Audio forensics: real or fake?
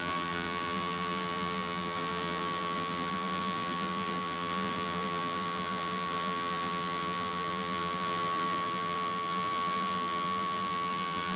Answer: fake